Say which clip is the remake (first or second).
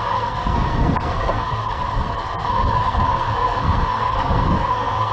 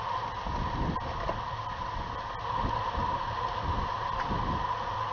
first